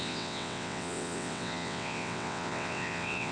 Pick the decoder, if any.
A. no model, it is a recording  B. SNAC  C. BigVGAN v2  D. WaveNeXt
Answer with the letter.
D